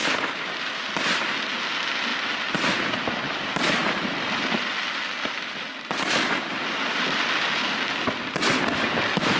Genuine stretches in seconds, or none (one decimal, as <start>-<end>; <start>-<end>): 0.7-3.8; 8.4-9.4